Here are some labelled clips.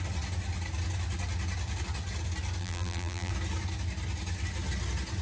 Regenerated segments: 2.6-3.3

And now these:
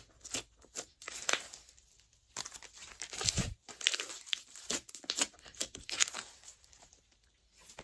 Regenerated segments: 0.9-2.4; 2.8-7.0

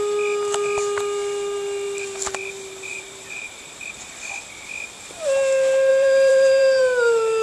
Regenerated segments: 2.9-3.6; 5.9-6.8

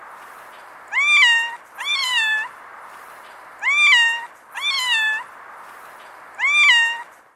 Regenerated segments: 1.9-3.6

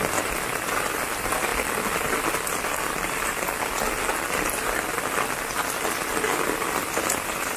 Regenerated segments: 1.5-3.4

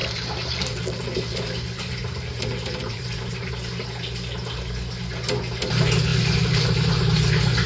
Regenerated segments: 0.0-3.5; 6.1-6.9

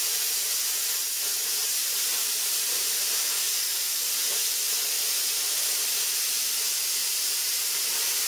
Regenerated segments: 1.6-4.2; 7.0-8.3

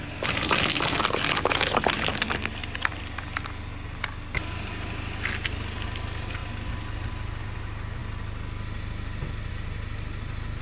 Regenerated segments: 2.1-3.5